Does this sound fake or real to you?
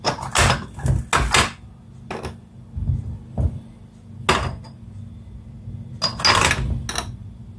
real